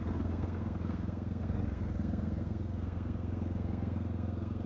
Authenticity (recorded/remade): remade